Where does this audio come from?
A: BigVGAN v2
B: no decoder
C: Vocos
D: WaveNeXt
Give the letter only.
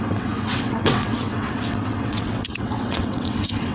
D